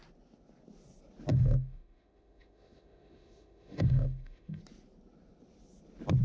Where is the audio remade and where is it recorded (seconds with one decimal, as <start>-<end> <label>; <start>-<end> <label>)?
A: 0.0-1.3 recorded; 1.3-4.6 remade; 4.6-6.2 recorded